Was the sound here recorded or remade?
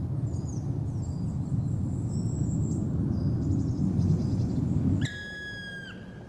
recorded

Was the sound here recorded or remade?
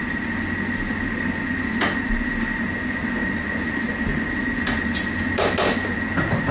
recorded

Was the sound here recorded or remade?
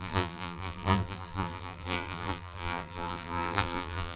remade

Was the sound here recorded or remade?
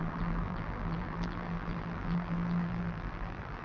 remade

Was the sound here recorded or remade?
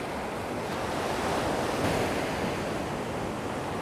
recorded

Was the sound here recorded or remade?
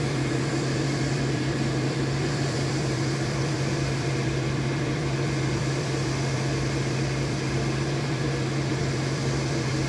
remade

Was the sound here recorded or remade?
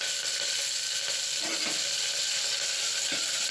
recorded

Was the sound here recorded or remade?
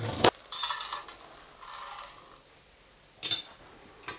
recorded